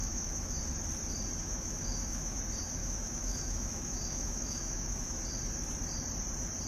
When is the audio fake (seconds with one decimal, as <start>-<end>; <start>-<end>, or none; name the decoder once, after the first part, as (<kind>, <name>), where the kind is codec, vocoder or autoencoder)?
0.0-0.6 (autoencoder, DAC-VAE); 1.4-2.4; 2.8-5.2